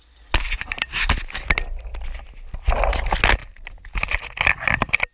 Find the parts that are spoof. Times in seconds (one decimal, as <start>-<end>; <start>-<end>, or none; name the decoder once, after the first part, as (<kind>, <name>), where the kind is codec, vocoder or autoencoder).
none